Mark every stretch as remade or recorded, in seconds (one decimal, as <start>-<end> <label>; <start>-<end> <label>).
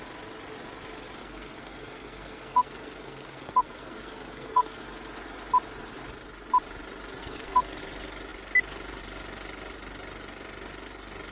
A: 0.0-1.2 recorded; 1.2-4.8 remade; 4.8-7.2 recorded; 7.2-7.8 remade; 7.8-11.3 recorded